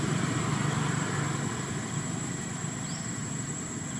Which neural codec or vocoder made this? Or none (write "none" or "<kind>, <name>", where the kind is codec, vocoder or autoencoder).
vocoder, BigVGAN v2